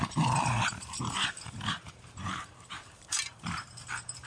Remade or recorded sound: remade